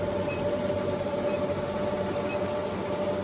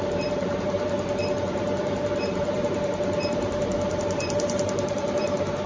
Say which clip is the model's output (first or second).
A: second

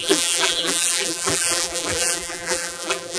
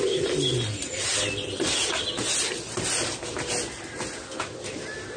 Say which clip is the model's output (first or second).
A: first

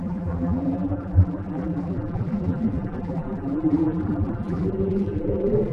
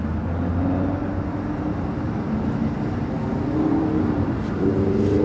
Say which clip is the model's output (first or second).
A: first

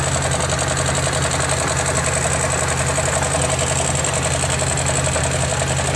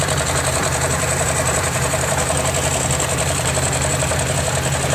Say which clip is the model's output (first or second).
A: second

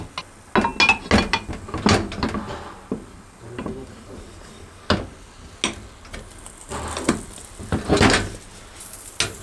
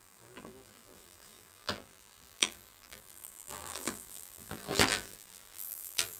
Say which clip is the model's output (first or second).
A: second